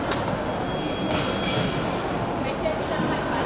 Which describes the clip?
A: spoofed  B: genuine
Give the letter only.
B